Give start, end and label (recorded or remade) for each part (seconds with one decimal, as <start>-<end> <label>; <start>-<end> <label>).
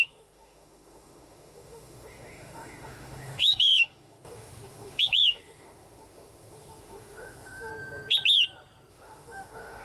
0.0-7.7 remade; 7.7-8.9 recorded; 8.9-9.8 remade